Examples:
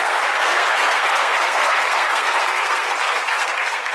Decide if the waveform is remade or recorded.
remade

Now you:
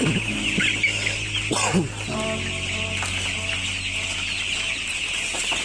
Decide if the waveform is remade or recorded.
recorded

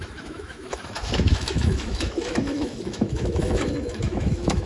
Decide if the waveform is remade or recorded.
remade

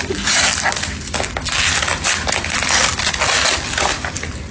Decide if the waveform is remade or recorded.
recorded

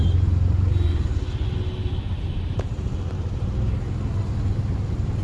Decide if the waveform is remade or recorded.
recorded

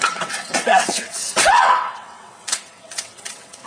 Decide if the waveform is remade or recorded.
remade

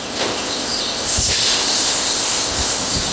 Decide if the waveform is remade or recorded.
remade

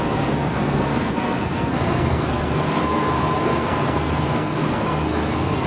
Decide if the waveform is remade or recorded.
remade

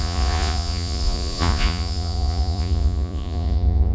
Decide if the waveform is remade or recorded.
remade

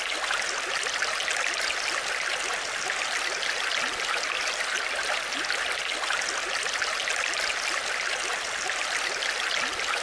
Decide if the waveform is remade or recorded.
recorded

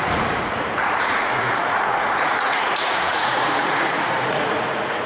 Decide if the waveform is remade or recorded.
remade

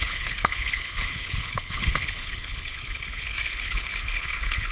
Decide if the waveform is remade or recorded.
remade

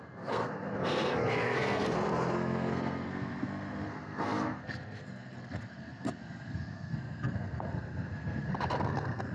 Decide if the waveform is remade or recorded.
remade